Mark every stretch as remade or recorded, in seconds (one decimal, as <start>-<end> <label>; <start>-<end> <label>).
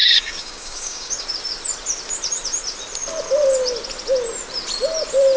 0.0-1.1 remade; 1.1-5.4 recorded